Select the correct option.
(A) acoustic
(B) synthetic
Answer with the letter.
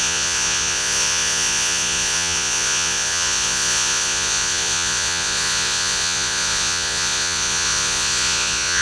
B